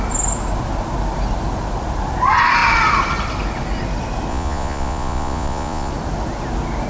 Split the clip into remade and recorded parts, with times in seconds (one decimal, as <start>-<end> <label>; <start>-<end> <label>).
0.0-4.3 recorded; 4.3-5.9 remade; 5.9-6.9 recorded